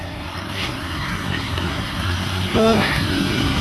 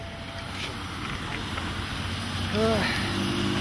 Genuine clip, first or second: second